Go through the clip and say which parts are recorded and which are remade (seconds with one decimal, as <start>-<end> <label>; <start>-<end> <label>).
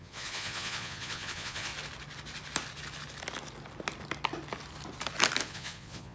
0.0-1.7 remade; 1.7-5.4 recorded; 5.4-6.1 remade